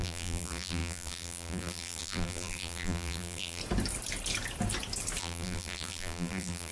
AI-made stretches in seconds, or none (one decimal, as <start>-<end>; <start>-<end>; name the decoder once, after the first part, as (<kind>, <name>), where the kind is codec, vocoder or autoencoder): 0.0-3.6 (vocoder, BigVGAN v2); 5.2-6.7